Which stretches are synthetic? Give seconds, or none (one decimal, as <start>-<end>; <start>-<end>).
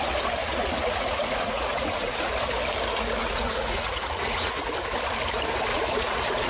0.4-2.3; 3.2-4.7; 5.7-6.5